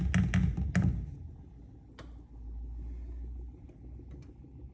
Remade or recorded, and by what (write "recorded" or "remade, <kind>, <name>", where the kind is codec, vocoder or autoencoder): recorded